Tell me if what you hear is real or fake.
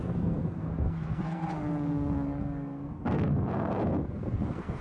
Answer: fake